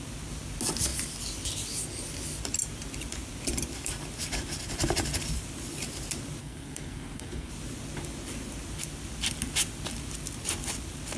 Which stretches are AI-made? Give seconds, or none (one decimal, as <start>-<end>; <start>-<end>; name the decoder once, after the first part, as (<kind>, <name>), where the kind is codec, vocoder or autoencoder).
6.4-7.5 (codec, SNAC)